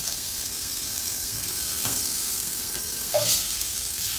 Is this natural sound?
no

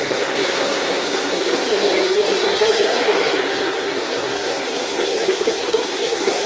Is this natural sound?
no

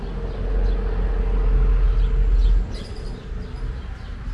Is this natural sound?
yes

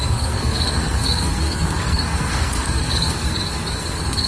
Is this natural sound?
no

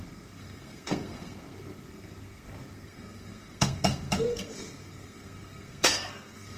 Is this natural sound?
no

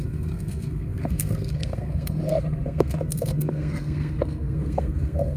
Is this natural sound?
no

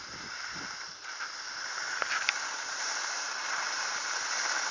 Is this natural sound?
yes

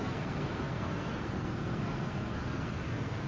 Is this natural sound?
no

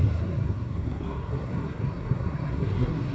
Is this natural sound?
no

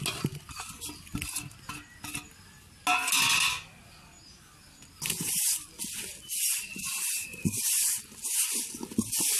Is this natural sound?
yes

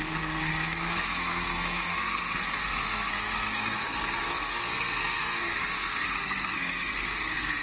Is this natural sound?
no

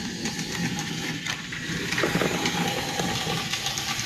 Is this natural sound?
yes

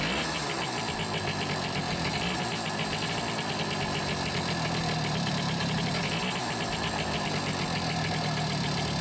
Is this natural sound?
yes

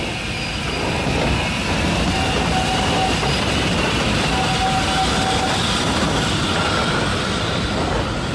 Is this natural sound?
yes